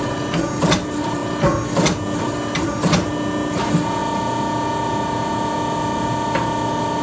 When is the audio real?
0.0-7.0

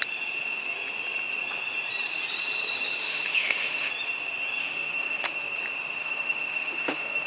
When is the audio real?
0.0-3.0; 3.9-4.6; 5.3-6.0

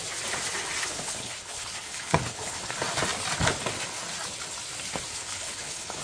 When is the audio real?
0.0-0.8; 2.6-5.1

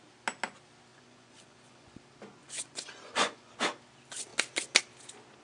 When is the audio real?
0.0-0.9; 2.0-2.4; 3.5-5.4